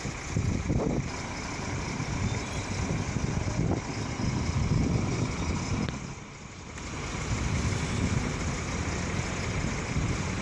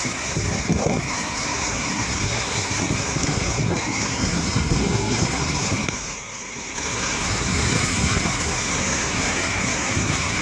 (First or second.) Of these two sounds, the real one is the first